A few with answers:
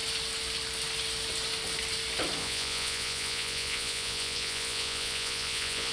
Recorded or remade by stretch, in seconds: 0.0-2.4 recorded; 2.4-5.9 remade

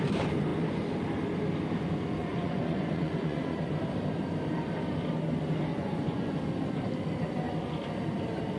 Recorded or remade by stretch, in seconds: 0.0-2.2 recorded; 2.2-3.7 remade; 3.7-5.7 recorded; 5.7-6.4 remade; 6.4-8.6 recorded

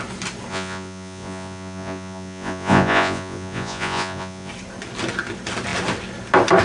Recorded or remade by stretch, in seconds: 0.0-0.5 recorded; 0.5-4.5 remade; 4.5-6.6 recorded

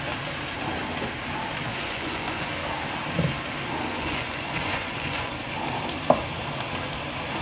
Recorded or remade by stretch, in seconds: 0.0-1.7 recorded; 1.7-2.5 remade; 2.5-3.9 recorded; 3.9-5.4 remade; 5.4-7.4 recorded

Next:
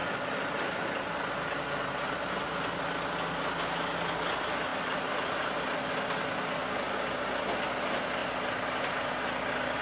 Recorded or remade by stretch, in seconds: 0.0-9.8 recorded

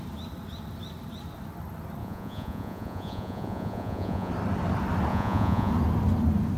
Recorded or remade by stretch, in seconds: 0.0-2.0 recorded; 2.0-4.3 remade; 4.3-5.1 recorded; 5.1-5.7 remade; 5.7-6.6 recorded

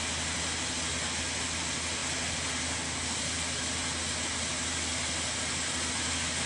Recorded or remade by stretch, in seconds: 0.0-6.5 recorded